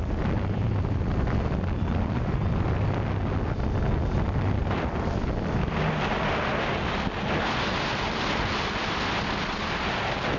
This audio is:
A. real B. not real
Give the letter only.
A